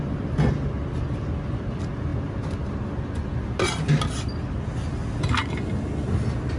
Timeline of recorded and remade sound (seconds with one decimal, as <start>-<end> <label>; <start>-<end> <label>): 0.0-6.6 recorded